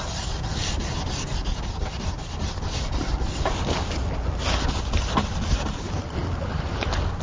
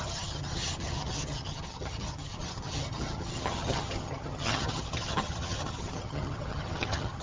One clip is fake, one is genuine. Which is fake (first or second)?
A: second